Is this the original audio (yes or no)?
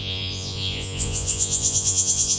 no